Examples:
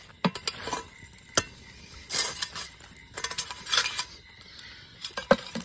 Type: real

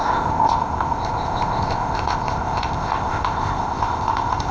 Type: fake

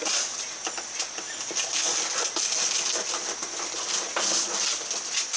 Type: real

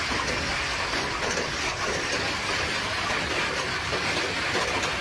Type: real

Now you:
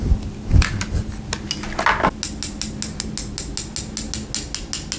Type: real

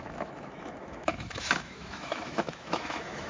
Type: fake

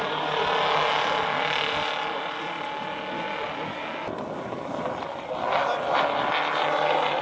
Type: real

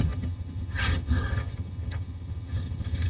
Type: fake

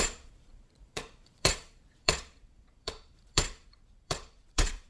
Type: fake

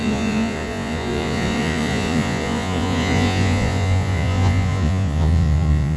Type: fake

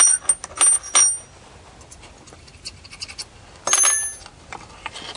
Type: real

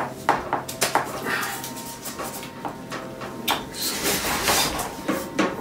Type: real